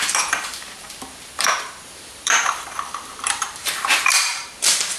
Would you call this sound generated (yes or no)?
yes